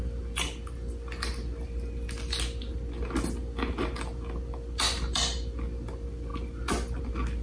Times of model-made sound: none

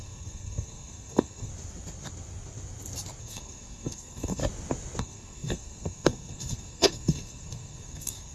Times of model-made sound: 0.0-1.5 (codec, SNAC); 3.2-4.4; 5.0-8.3

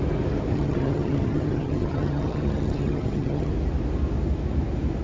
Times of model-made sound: 0.5-3.5 (vocoder, HiFi-GAN)

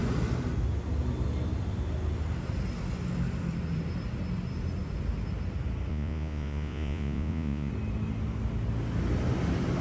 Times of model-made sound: 5.9-7.7 (vocoder, Vocos)

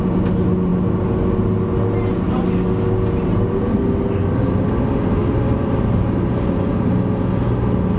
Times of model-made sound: none

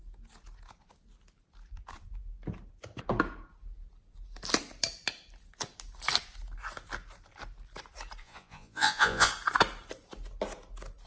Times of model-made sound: 8.2-9.3 (vocoder, Vocos)